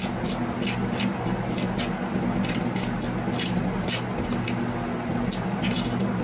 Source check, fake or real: real